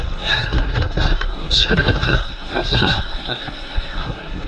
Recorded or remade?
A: remade